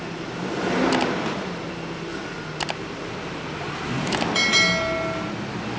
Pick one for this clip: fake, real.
real